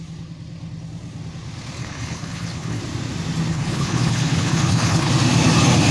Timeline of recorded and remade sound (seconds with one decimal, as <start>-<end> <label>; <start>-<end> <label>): 0.0-1.8 recorded; 1.8-2.8 remade; 2.8-3.5 recorded; 3.5-5.1 remade; 5.1-5.9 recorded